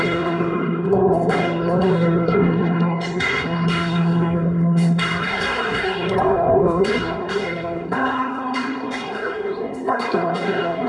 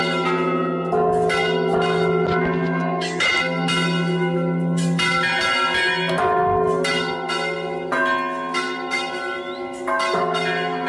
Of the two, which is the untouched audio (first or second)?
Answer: second